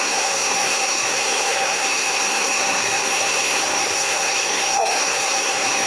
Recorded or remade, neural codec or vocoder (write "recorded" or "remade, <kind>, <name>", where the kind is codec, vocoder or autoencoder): remade, codec, SNAC